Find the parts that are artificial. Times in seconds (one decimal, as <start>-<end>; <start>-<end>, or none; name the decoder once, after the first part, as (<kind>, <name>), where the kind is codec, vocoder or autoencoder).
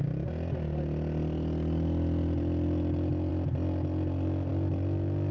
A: none